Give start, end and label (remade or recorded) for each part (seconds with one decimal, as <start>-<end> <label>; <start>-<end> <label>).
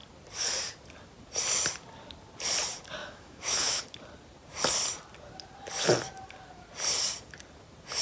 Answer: 0.0-3.0 recorded; 3.0-3.8 remade; 3.8-8.0 recorded